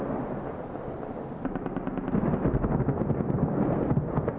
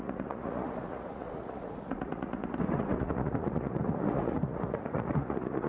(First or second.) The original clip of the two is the first